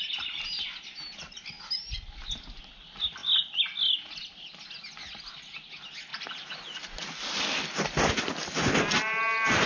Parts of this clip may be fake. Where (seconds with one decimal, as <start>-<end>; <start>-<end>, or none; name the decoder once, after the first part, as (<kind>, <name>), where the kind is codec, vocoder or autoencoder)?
none